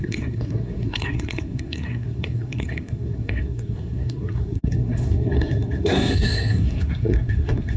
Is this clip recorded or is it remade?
remade